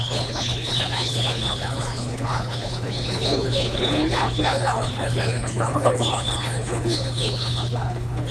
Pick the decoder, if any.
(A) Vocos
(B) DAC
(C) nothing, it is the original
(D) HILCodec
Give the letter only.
D